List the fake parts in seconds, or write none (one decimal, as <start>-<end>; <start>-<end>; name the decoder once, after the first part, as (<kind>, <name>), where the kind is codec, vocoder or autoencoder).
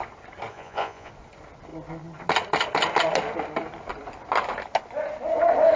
0.5-1.1 (vocoder, Vocos)